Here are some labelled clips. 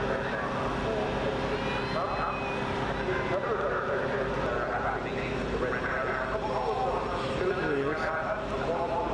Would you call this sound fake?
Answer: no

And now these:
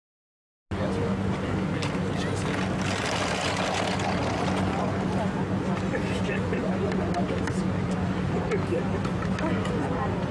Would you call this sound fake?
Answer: no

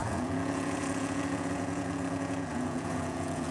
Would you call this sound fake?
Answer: yes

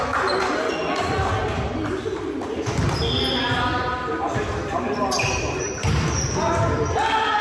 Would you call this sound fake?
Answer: no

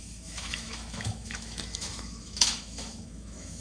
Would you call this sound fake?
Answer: yes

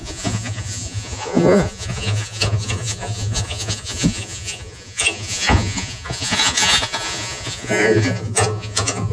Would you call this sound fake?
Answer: yes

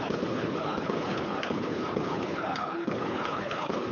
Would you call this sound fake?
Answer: yes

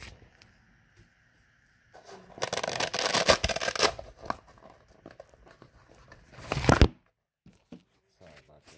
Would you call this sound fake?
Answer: no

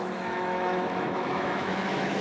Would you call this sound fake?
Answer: yes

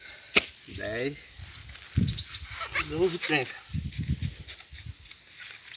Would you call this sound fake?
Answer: no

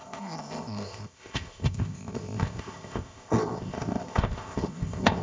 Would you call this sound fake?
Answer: yes